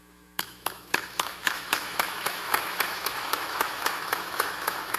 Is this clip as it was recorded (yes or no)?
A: no